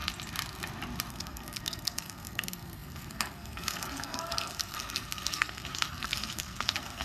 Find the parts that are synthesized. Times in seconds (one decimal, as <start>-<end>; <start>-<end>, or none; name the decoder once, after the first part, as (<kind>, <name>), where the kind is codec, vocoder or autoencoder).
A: 1.1-7.0 (codec, SNAC)